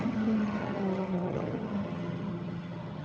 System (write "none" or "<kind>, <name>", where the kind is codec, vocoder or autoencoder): vocoder, HiFi-GAN